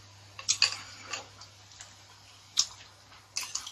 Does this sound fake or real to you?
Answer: real